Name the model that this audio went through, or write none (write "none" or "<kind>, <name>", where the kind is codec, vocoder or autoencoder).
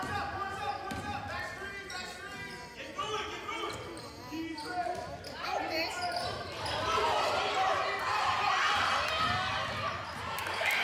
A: none